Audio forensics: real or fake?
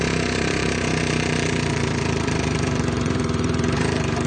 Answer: fake